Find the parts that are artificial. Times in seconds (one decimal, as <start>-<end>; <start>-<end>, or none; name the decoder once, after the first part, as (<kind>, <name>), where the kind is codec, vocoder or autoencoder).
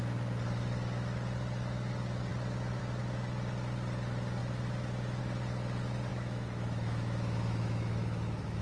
6.1-8.6 (autoencoder, DAC-VAE)